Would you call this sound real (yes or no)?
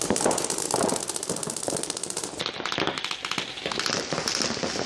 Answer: yes